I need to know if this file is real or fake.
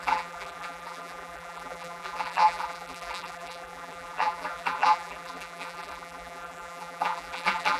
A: fake